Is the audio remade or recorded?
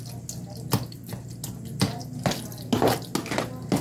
recorded